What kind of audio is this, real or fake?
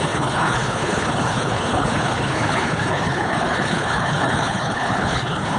fake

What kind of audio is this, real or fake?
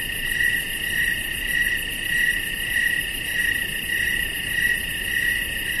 real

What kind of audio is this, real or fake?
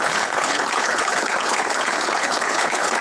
fake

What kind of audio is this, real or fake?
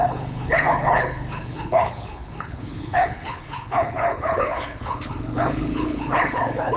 fake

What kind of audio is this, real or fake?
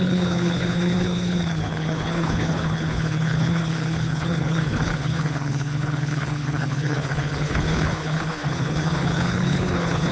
fake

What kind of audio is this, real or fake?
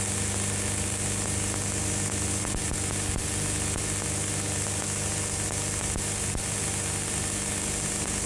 real